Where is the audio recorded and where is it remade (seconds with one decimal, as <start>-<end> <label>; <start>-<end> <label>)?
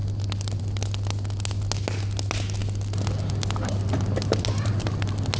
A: 0.0-5.4 recorded